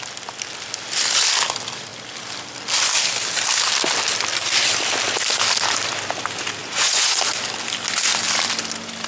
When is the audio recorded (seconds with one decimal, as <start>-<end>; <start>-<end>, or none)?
0.0-6.6; 7.2-9.1